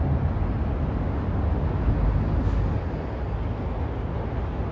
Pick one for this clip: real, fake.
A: real